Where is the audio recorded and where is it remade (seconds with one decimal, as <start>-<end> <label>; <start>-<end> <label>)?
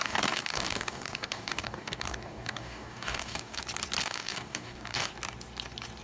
0.0-3.6 remade; 3.6-4.0 recorded; 4.0-5.1 remade; 5.1-6.0 recorded